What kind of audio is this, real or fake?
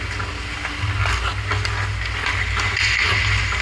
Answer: real